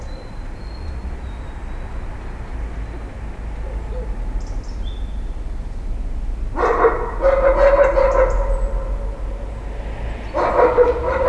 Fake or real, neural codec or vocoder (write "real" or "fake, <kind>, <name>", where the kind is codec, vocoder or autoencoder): real